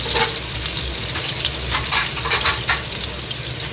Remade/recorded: recorded